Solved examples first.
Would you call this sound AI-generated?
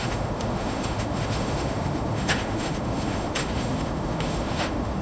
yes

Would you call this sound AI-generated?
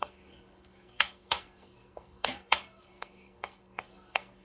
yes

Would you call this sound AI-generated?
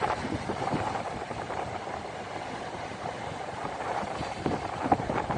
yes